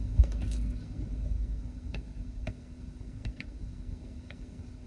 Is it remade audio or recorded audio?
remade